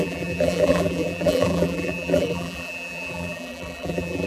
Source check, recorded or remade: remade